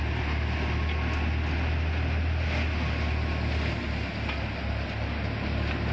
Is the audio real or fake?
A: real